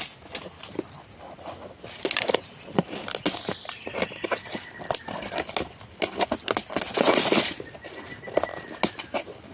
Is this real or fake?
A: real